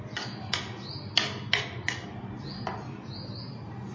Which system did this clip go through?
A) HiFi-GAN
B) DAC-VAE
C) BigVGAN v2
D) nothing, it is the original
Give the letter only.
D